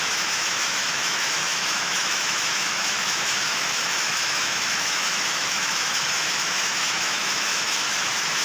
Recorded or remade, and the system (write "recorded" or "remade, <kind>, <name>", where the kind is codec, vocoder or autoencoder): remade, autoencoder, DAC-VAE